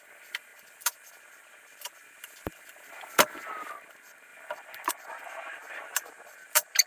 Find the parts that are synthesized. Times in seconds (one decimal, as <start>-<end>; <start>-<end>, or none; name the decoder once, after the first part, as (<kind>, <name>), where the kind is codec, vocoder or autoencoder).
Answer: 0.0-6.9 (vocoder, BigVGAN v2)